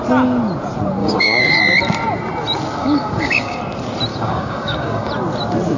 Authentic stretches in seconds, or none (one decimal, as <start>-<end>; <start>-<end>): 0.0-1.0; 1.6-2.8; 3.6-4.1; 5.1-5.8